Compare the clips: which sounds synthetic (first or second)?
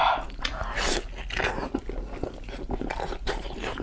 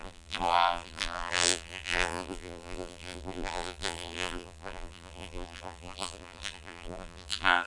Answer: second